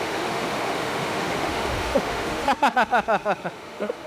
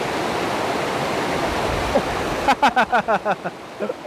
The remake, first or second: first